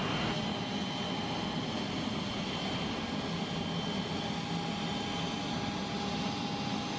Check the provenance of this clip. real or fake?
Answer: real